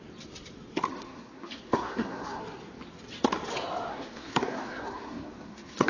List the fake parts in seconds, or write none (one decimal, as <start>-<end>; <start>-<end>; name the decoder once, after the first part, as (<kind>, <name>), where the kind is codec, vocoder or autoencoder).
0.9-2.4 (codec, SNAC); 3.9-5.9

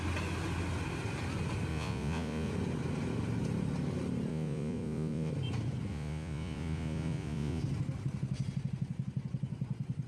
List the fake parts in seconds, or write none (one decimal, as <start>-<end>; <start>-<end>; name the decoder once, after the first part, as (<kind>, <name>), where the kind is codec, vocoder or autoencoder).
1.7-2.5 (vocoder, Vocos); 4.3-5.3; 5.9-7.6

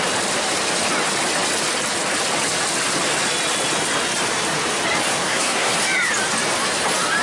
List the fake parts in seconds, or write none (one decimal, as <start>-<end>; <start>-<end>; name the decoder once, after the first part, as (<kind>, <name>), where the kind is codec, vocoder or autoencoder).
5.1-5.7 (codec, SNAC)

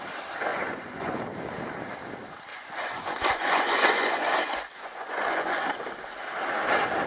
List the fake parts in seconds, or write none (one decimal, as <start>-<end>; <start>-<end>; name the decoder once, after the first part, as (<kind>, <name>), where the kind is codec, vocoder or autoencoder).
0.5-1.2 (vocoder, Vocos); 2.5-5.6

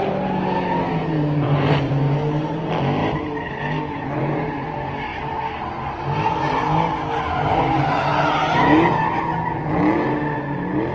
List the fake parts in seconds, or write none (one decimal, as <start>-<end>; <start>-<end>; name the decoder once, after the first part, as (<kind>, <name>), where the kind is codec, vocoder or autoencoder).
1.0-1.9 (vocoder, BigVGAN v2); 3.0-3.8; 5.1-6.0

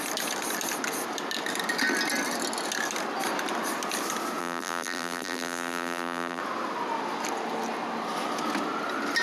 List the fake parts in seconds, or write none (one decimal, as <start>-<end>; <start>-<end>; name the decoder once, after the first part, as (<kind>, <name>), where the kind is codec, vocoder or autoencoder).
4.4-6.4 (vocoder, BigVGAN v2)